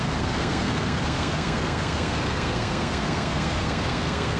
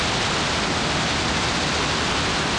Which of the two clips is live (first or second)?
second